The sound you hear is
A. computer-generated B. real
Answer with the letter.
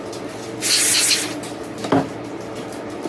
B